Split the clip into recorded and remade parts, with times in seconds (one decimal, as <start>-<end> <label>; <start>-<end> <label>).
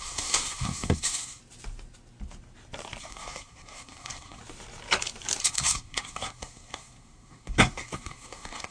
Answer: 0.0-1.4 remade; 1.4-3.0 recorded; 3.0-4.4 remade; 4.4-5.4 recorded; 5.4-8.7 remade